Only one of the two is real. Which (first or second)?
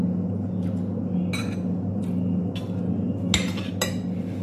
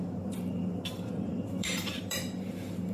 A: first